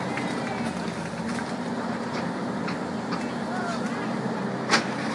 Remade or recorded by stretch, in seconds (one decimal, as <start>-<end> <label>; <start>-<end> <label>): 0.0-5.1 recorded